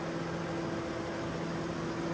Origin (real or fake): real